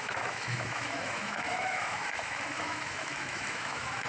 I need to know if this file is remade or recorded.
remade